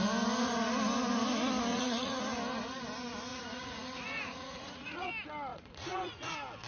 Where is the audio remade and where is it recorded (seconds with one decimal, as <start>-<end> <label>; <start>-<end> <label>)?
0.0-1.7 recorded; 1.7-2.2 remade; 2.2-3.3 recorded; 3.3-5.1 remade; 5.1-5.5 recorded; 5.5-6.3 remade; 6.3-6.7 recorded